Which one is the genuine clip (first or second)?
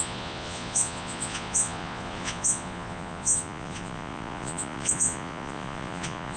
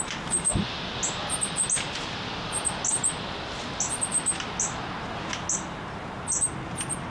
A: second